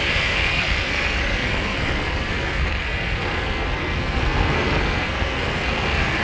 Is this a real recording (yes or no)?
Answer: no